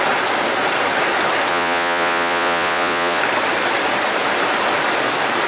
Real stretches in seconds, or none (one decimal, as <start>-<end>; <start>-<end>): 0.0-1.5; 3.2-5.5